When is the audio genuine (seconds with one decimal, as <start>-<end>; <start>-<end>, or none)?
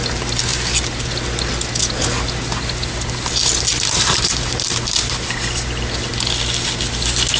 0.0-7.4